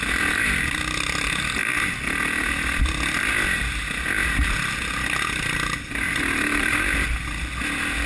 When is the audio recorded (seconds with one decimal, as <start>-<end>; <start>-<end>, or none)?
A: 0.0-8.1

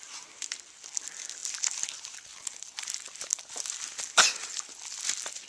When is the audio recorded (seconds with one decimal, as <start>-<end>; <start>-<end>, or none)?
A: 0.0-5.5

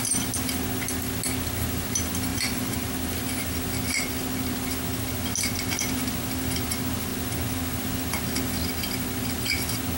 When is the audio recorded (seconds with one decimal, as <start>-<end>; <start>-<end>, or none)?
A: 0.0-2.3; 2.9-10.0

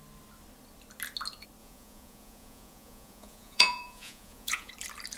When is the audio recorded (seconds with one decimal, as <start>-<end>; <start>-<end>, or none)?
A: 0.0-1.6; 4.7-5.2

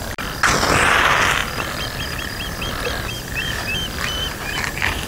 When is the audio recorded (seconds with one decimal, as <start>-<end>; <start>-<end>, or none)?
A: 0.0-1.4; 4.5-5.1

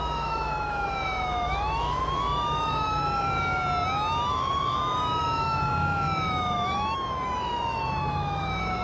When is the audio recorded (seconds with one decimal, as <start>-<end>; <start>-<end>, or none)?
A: 3.6-4.3

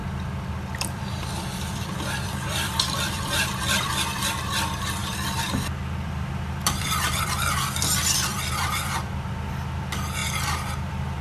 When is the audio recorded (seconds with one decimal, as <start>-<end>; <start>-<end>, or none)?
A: 3.9-5.0; 9.1-10.2

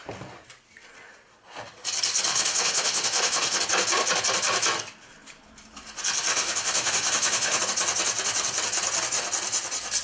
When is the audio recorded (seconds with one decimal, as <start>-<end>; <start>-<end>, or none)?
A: 0.0-2.3; 3.6-6.3; 7.6-10.0